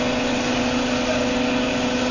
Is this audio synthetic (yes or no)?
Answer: no